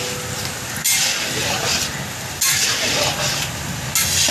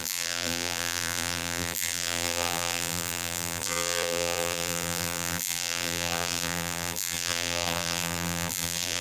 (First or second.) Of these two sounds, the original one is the first